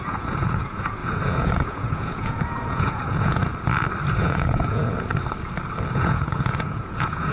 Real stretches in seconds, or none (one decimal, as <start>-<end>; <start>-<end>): 3.4-4.1; 5.1-5.9

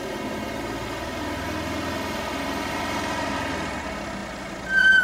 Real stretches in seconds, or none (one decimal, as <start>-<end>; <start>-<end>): 0.0-5.0

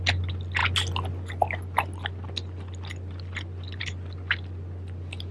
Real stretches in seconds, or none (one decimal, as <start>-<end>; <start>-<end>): 0.0-5.3

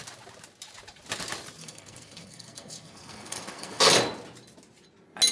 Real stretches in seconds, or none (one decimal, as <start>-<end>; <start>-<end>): 0.0-1.6; 3.8-5.3

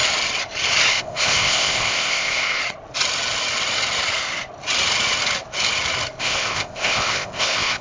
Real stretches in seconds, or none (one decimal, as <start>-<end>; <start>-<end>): 0.0-0.9; 2.6-6.2